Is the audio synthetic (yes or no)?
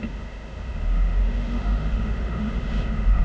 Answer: yes